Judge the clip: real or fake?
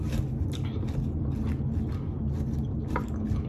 real